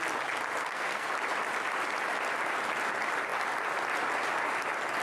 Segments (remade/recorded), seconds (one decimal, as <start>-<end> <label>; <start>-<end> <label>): 0.0-0.6 recorded; 0.6-1.1 remade; 1.1-5.0 recorded